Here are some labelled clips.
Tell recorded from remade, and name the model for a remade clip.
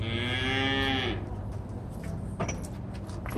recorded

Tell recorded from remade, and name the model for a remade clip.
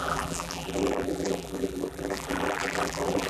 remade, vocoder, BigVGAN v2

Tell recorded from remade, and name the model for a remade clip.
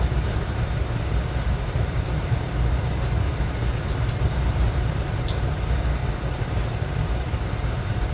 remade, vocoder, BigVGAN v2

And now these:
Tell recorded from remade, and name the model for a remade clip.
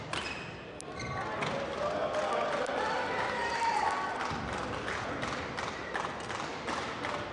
recorded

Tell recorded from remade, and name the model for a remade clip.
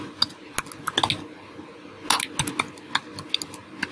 recorded